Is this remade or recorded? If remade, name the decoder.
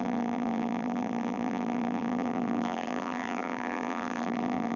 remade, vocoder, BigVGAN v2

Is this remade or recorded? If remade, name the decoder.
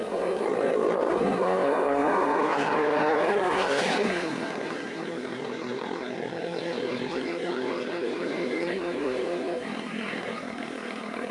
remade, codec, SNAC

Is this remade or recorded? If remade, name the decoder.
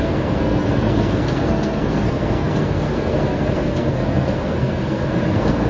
remade, codec, SNAC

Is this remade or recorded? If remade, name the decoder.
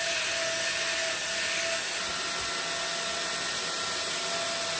recorded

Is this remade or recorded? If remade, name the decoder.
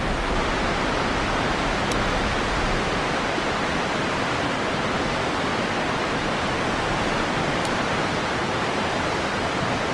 recorded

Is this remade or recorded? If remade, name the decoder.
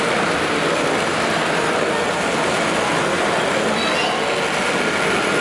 recorded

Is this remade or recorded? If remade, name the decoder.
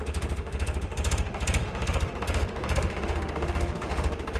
remade, autoencoder, DAC-VAE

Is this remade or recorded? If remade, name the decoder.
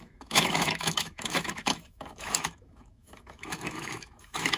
remade, autoencoder, DAC-VAE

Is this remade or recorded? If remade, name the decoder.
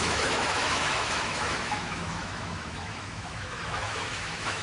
remade, autoencoder, DAC-VAE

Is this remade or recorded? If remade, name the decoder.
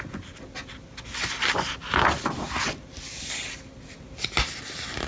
recorded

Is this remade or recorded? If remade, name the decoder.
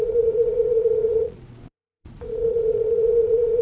remade, vocoder, Vocos